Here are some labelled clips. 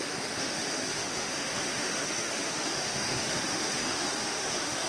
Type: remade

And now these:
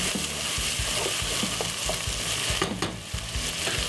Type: recorded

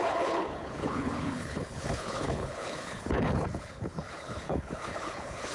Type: remade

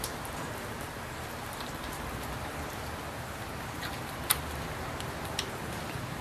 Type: remade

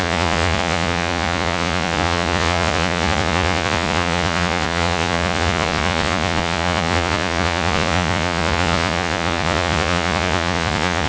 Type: remade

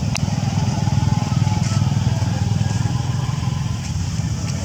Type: recorded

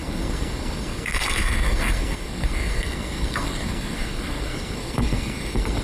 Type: remade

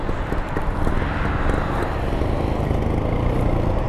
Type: recorded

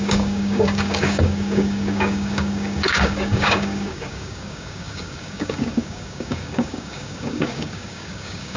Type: remade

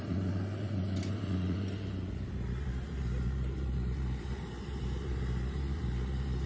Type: recorded